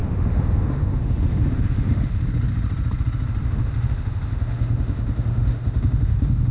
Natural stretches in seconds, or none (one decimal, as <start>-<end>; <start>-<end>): 2.2-3.4